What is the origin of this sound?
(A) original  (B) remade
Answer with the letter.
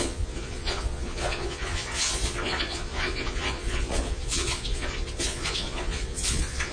B